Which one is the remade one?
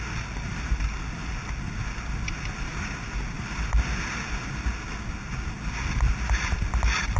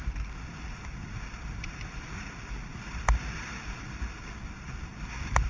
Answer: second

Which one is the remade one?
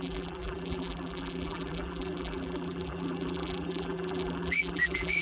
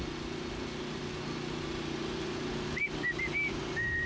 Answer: first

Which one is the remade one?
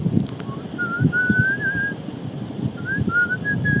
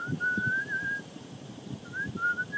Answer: second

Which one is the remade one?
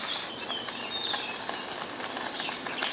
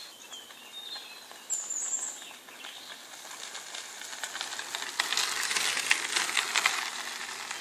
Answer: first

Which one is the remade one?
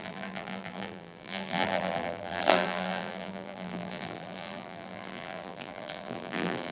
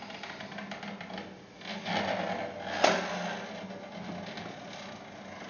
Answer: first